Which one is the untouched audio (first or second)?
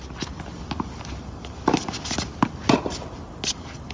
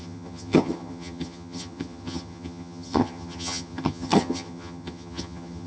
first